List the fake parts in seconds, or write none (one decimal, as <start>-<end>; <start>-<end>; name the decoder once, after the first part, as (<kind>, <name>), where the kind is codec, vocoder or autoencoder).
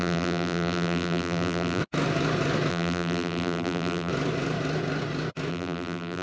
0.0-1.8 (vocoder, BigVGAN v2); 2.7-4.1; 5.5-6.2